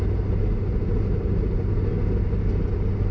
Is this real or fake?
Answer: real